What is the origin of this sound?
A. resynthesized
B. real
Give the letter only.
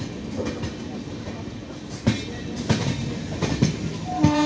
B